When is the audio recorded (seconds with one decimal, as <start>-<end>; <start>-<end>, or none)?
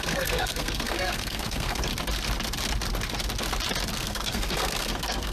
1.9-3.9